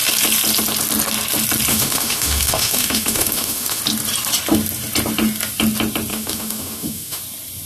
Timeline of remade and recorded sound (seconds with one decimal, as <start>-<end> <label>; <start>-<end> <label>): 0.0-1.7 recorded; 1.7-3.8 remade; 3.8-6.1 recorded; 6.1-7.2 remade; 7.2-7.7 recorded